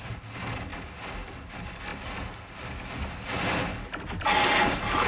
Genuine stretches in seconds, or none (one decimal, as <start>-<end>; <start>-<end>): 0.0-5.1